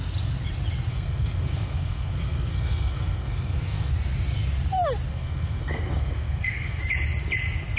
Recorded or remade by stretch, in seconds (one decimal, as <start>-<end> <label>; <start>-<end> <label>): 0.0-0.9 recorded; 0.9-3.9 remade; 3.9-5.1 recorded; 5.1-6.8 remade; 6.8-7.8 recorded